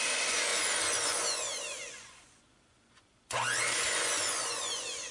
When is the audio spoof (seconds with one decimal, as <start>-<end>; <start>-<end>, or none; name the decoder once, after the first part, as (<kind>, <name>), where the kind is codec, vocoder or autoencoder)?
0.0-5.1 (vocoder, Vocos)

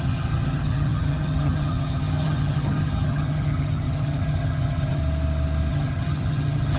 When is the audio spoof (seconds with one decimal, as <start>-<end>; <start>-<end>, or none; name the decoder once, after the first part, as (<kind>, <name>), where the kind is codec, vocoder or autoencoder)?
0.0-5.0 (vocoder, HiFi-GAN); 5.7-6.8

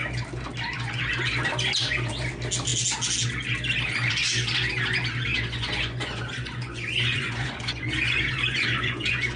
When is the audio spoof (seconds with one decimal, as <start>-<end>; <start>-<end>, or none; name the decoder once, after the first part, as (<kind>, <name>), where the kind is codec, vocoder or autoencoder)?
5.3-9.4 (vocoder, Vocos)